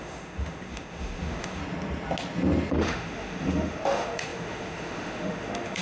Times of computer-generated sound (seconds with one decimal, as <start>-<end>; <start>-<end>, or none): 0.0-1.6; 2.7-5.8